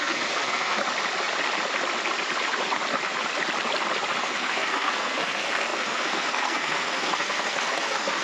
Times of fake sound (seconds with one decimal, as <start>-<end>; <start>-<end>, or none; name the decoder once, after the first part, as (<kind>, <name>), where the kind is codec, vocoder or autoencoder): 0.0-0.8 (codec, SNAC); 4.2-8.2